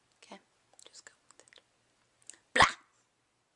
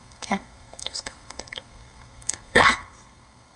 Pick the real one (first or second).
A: first